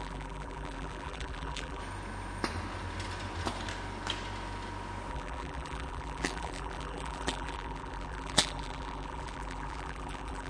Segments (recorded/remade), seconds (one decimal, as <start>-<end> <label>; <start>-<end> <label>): 0.0-1.8 remade; 1.8-5.1 recorded; 5.1-10.5 remade